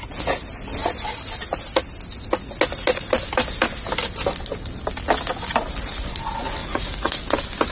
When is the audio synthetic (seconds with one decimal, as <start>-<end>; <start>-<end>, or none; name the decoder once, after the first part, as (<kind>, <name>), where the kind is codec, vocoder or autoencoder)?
6.6-7.2 (vocoder, Vocos)